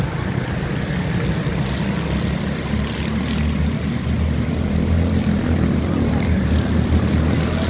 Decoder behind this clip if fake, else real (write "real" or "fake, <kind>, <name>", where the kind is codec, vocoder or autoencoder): real